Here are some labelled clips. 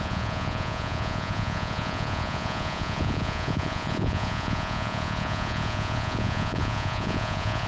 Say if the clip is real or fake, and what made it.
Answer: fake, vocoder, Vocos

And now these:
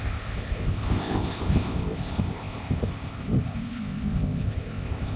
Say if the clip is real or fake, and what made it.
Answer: fake, codec, ZipCodec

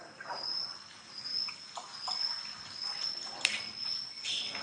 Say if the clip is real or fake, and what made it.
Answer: real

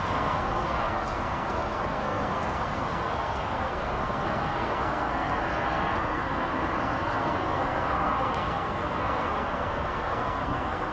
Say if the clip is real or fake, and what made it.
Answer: fake, codec, SNAC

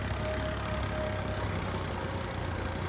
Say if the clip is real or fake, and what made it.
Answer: real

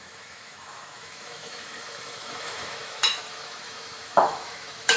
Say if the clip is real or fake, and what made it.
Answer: fake, autoencoder, DAC-VAE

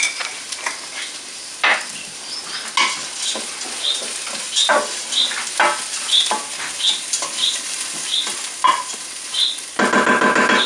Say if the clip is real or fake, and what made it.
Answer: real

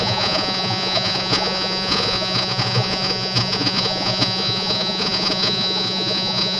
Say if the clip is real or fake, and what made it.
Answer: fake, vocoder, Vocos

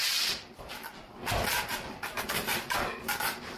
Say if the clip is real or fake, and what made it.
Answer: fake, vocoder, BigVGAN v2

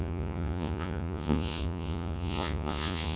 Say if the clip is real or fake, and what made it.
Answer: fake, vocoder, Vocos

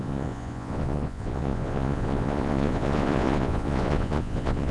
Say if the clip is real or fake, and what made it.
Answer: fake, vocoder, Vocos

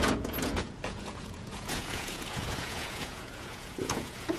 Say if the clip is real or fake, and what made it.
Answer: fake, vocoder, Vocos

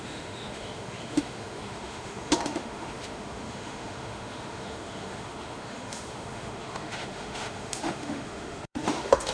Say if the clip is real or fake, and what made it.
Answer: fake, autoencoder, DAC-VAE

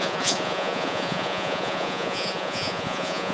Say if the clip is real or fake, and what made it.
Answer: fake, vocoder, Vocos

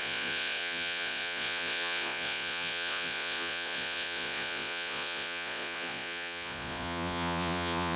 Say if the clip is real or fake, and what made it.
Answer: fake, vocoder, Vocos